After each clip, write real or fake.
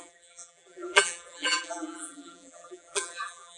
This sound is fake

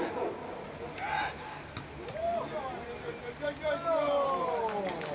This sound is real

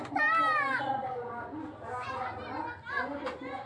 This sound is real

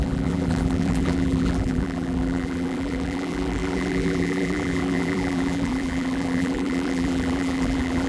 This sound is fake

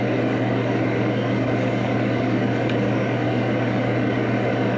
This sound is fake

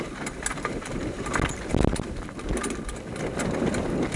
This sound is real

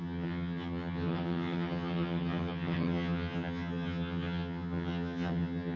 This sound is fake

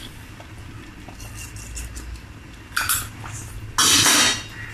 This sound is real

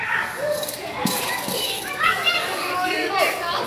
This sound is fake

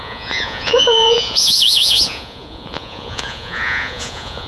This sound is fake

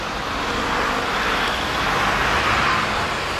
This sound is real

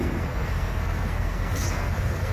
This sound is fake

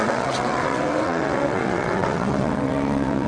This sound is fake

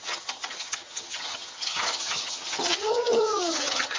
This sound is fake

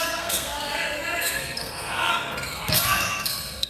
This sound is fake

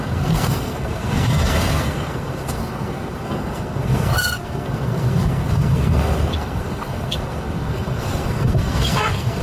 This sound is fake